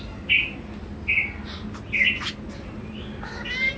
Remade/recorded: recorded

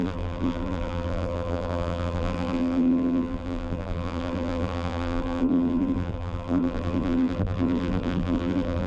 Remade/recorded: remade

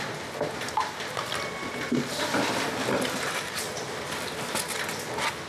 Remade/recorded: recorded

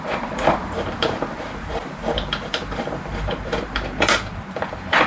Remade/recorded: remade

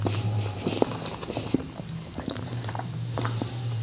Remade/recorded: remade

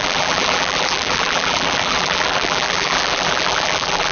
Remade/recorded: remade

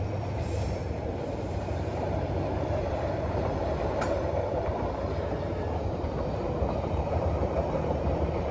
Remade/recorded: remade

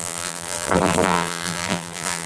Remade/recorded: remade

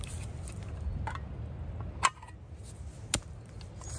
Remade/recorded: recorded